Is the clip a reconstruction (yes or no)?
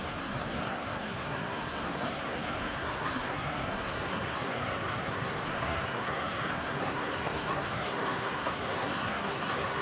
yes